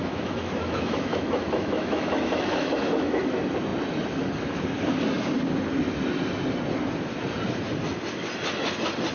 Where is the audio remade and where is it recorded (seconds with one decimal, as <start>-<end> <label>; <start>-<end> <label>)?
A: 0.0-3.2 remade; 3.2-9.1 recorded